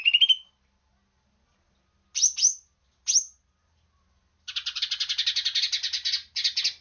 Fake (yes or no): no